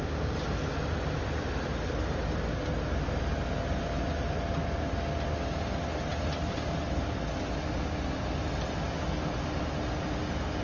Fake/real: real